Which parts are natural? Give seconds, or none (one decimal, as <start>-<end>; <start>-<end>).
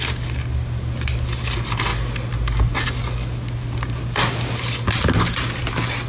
0.0-6.1